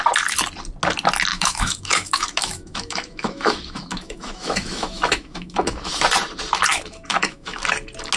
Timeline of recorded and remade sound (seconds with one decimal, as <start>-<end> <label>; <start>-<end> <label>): 0.0-1.3 recorded; 1.3-5.9 remade; 5.9-6.7 recorded; 6.7-7.6 remade; 7.6-8.2 recorded